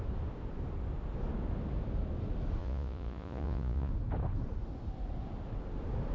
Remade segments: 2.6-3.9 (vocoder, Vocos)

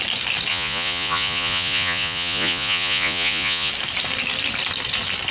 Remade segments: 0.5-3.7 (vocoder, Vocos)

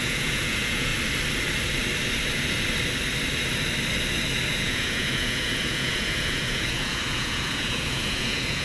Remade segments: 0.0-0.9 (vocoder, Vocos); 4.5-8.6

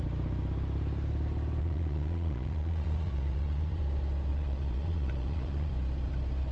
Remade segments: 1.6-3.8 (vocoder, Vocos); 4.3-5.7

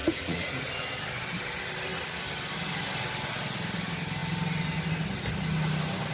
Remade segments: 0.0-0.6 (vocoder, Vocos)

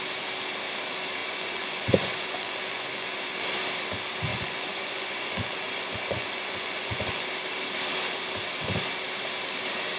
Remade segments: 1.2-3.4 (vocoder, Vocos); 4.3-7.3